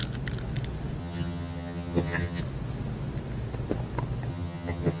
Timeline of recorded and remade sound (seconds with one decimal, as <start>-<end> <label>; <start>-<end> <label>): 0.0-1.0 recorded; 1.0-2.4 remade; 2.4-4.3 recorded; 4.3-5.0 remade